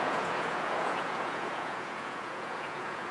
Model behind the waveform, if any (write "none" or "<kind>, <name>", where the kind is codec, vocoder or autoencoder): vocoder, Vocos